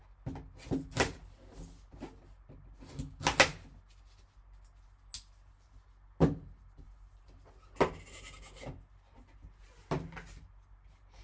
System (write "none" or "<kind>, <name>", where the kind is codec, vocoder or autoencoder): none